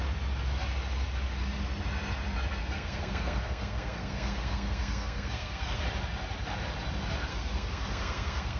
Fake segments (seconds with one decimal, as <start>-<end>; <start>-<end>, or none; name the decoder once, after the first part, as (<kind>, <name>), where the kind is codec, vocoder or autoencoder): 2.6-5.8 (codec, SNAC); 7.3-8.6